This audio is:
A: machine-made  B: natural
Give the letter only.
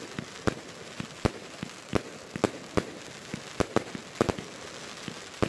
B